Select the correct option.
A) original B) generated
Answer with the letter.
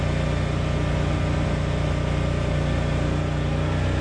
A